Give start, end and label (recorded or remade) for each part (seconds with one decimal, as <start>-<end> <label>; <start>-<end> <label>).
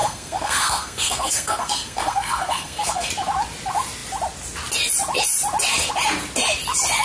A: 0.0-3.1 remade; 3.1-7.0 recorded